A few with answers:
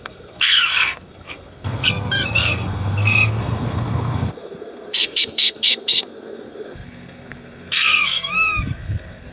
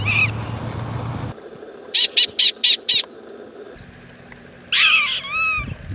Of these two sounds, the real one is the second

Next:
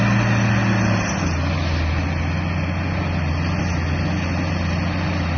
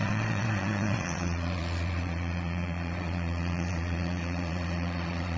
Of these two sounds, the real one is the first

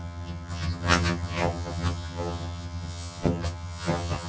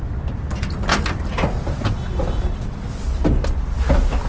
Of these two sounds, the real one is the second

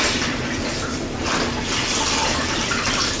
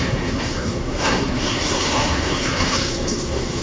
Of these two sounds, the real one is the first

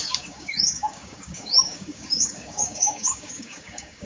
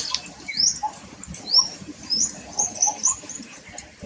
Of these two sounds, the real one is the second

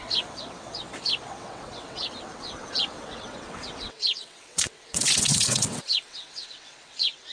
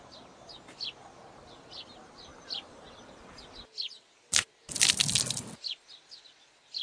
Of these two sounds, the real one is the second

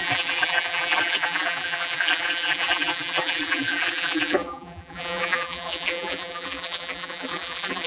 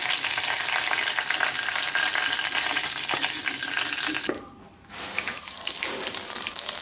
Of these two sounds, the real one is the second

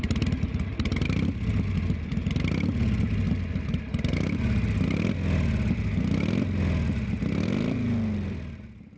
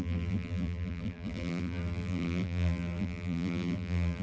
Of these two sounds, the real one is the first